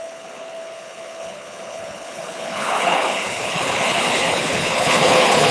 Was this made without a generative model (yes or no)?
no